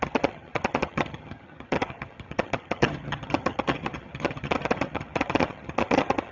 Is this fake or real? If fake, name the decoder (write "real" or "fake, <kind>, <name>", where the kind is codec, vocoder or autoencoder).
fake, vocoder, HiFi-GAN